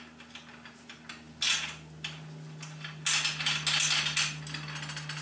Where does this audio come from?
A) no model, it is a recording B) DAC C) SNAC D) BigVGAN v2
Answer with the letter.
A